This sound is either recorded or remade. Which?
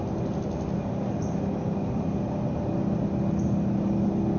recorded